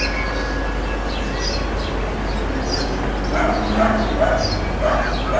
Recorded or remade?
recorded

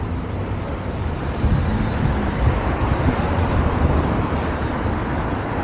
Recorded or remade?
remade